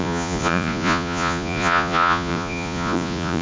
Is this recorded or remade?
remade